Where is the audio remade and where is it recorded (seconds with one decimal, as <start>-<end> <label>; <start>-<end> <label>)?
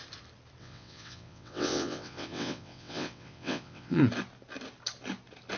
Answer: 0.0-0.6 recorded; 0.6-4.0 remade; 4.0-5.6 recorded